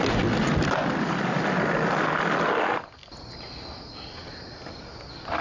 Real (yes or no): yes